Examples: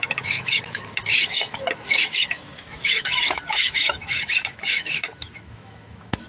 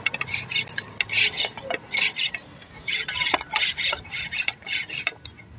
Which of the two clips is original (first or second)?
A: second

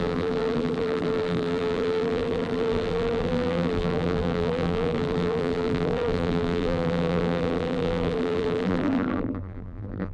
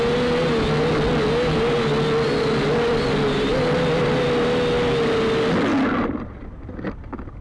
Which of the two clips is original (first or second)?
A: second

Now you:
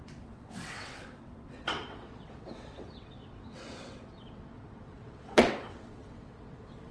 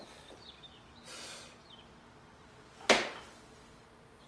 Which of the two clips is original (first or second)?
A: second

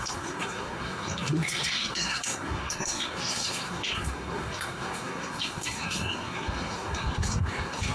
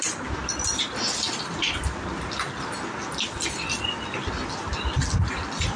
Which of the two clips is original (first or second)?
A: second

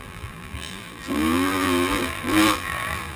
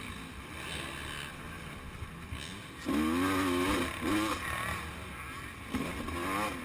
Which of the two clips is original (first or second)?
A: second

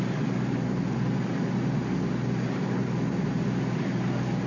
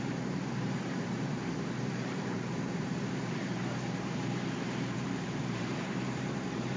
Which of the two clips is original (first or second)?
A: first